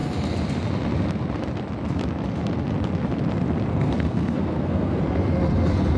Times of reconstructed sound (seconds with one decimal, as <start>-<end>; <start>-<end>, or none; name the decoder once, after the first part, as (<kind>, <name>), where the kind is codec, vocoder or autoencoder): 3.7-5.0 (codec, SNAC)